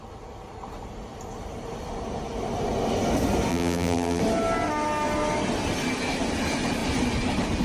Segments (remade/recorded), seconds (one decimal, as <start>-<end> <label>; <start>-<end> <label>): 0.0-3.5 recorded; 3.5-4.2 remade; 4.2-7.6 recorded